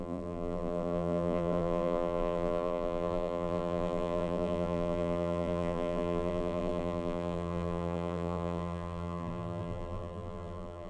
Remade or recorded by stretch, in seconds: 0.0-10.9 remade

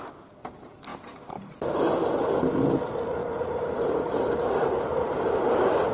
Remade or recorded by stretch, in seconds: 0.0-3.2 recorded; 3.2-4.2 remade; 4.2-5.9 recorded

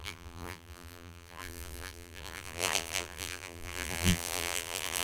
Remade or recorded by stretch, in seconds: 0.0-5.0 remade

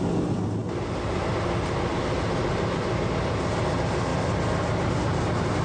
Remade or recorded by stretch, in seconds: 0.0-1.9 recorded; 1.9-3.1 remade; 3.1-5.6 recorded

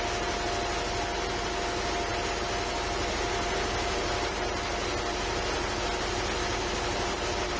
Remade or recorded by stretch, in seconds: 0.0-7.6 recorded

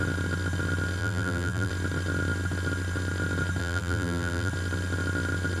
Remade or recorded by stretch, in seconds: 0.0-1.0 recorded; 1.0-1.7 remade; 1.7-3.6 recorded; 3.6-4.5 remade; 4.5-5.6 recorded

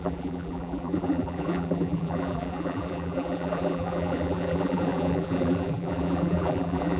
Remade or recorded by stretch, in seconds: 0.0-7.0 remade

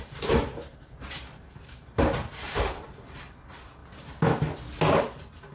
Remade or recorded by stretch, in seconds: 0.0-3.8 remade; 3.8-5.0 recorded; 5.0-5.5 remade